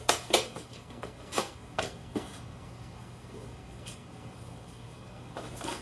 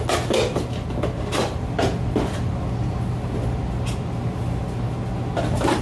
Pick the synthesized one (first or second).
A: first